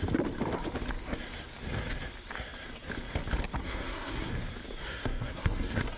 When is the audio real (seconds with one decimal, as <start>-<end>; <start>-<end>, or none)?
0.0-3.6; 4.3-4.8